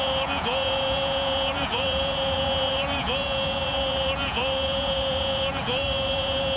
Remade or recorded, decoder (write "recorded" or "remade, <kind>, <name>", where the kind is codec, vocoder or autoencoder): remade, vocoder, Vocos